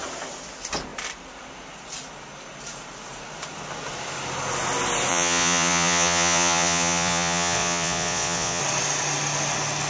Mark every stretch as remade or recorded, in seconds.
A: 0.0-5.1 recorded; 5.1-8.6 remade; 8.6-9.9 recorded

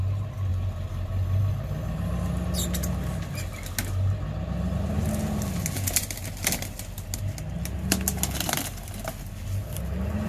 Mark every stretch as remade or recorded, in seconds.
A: 0.0-0.5 recorded; 0.5-1.4 remade; 1.4-10.3 recorded

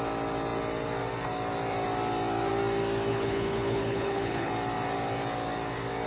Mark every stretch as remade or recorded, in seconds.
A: 0.0-3.1 recorded; 3.1-4.5 remade; 4.5-6.1 recorded

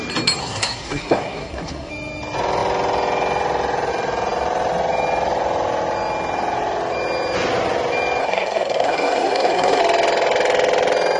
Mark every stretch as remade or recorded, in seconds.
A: 0.0-0.4 recorded; 0.4-1.9 remade; 1.9-8.2 recorded; 8.2-9.8 remade; 9.8-11.2 recorded

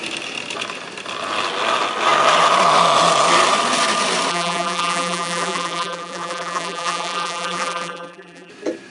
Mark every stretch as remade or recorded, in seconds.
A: 0.0-4.3 recorded; 4.3-8.5 remade; 8.5-8.9 recorded

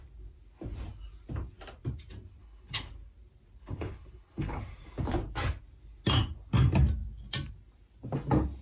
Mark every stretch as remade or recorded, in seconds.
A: 0.0-2.4 recorded; 2.4-2.9 remade; 2.9-3.6 recorded; 3.6-4.6 remade; 4.6-8.6 recorded

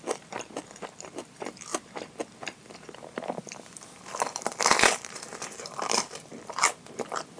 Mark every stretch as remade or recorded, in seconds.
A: 0.0-7.4 remade

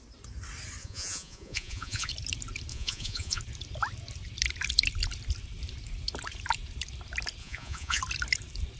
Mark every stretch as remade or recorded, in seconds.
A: 0.0-0.8 recorded; 0.8-2.1 remade; 2.1-2.7 recorded; 2.7-3.4 remade; 3.4-7.4 recorded; 7.4-8.0 remade; 8.0-8.8 recorded